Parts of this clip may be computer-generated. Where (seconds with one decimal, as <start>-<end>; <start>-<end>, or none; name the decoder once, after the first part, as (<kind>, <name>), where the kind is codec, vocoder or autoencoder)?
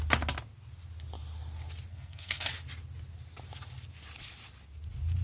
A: 1.9-2.5 (codec, SNAC)